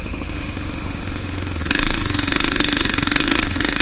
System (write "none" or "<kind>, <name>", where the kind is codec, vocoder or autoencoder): autoencoder, DAC-VAE